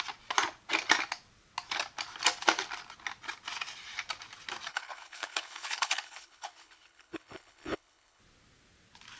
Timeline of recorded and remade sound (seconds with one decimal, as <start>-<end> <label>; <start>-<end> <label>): 0.0-4.7 recorded; 4.7-8.2 remade; 8.2-9.2 recorded